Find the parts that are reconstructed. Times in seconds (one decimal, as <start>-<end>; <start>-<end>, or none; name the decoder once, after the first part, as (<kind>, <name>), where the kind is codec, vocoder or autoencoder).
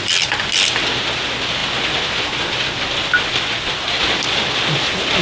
none